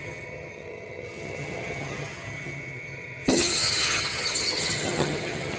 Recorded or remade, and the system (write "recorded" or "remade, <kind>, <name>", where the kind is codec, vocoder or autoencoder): remade, vocoder, HiFi-GAN